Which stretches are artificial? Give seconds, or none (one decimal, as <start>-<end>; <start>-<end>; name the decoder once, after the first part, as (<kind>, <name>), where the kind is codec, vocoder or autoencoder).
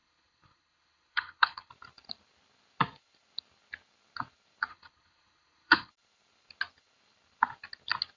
0.0-1.7 (codec, HILCodec); 4.7-5.9